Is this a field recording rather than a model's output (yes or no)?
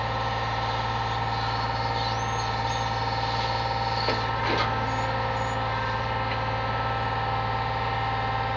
yes